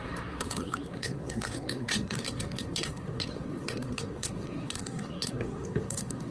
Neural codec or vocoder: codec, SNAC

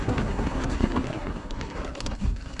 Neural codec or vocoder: codec, SNAC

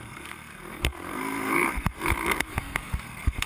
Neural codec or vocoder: codec, SNAC